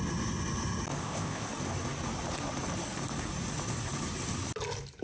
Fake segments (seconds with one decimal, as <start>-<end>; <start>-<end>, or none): 1.0-1.5